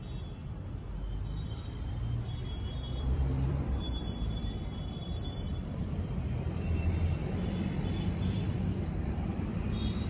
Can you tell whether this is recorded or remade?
remade